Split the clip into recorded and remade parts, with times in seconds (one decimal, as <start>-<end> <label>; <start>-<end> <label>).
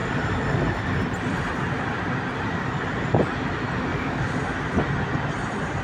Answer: 0.0-3.9 recorded; 3.9-4.4 remade; 4.4-5.8 recorded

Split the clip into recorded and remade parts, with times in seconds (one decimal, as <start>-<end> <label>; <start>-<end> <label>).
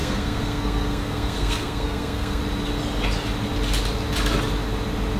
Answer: 0.0-2.4 remade; 2.4-5.2 recorded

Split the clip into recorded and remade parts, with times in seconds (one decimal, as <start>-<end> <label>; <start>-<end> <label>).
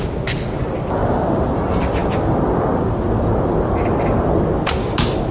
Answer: 0.0-1.0 recorded; 1.0-1.6 remade; 1.6-5.3 recorded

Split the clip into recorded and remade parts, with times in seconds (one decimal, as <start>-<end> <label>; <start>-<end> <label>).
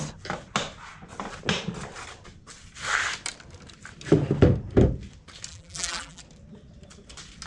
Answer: 0.0-5.5 recorded; 5.5-6.2 remade; 6.2-7.5 recorded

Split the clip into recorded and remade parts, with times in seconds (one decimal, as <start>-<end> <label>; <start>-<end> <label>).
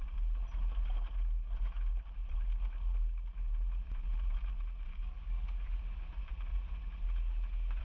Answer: 0.0-4.9 recorded; 4.9-5.8 remade; 5.8-7.8 recorded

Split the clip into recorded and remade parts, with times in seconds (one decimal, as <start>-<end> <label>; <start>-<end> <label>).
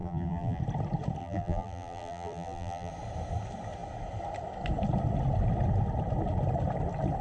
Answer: 0.0-0.6 remade; 0.6-1.2 recorded; 1.2-2.9 remade; 2.9-7.2 recorded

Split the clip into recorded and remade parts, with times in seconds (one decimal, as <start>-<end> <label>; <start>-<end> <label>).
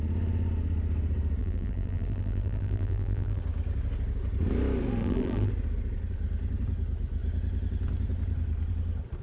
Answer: 0.0-1.4 recorded; 1.4-3.4 remade; 3.4-5.0 recorded; 5.0-5.5 remade; 5.5-9.2 recorded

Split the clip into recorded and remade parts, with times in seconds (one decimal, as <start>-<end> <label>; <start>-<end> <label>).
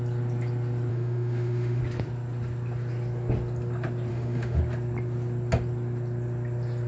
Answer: 0.0-0.9 recorded; 0.9-1.8 remade; 1.8-4.1 recorded; 4.1-4.6 remade; 4.6-6.9 recorded